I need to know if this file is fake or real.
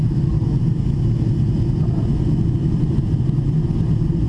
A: real